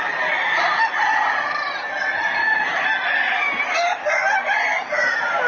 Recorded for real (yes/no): yes